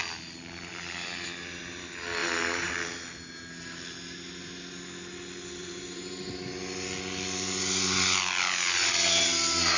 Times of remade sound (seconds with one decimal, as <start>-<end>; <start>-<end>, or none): 2.2-2.7; 5.6-6.3

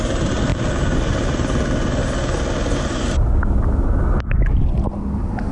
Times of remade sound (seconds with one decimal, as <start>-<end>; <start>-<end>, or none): none

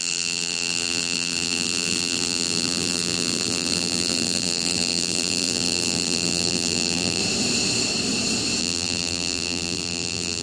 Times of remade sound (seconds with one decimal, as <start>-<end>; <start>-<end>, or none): 0.0-7.2; 8.6-10.4

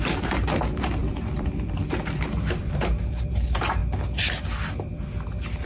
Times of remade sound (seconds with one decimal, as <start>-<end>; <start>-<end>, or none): 0.0-3.8

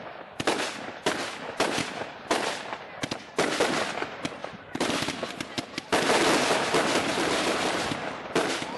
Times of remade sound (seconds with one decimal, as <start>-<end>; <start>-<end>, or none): 4.4-5.3; 7.1-7.8

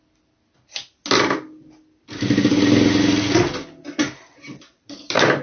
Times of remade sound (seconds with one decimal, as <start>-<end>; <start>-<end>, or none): 4.8-5.4

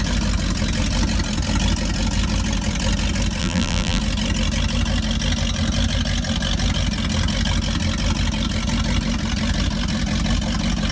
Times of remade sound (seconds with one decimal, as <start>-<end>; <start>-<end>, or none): 3.4-4.0

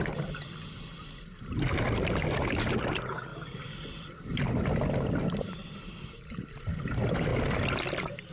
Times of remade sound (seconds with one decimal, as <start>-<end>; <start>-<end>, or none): 3.3-5.8